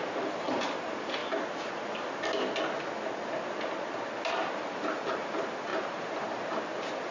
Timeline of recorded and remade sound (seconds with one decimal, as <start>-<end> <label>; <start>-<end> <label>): 0.0-1.2 remade; 1.2-4.3 recorded; 4.3-7.1 remade